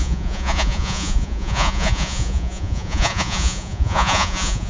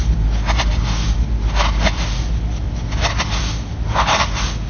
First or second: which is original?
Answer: second